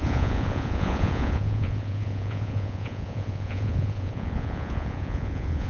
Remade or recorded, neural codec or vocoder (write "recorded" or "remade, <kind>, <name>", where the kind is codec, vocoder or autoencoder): remade, vocoder, Vocos